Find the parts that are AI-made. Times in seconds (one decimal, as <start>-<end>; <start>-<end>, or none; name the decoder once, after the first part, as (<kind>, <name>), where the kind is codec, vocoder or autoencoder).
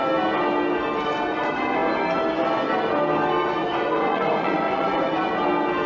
3.6-5.3 (vocoder, Vocos)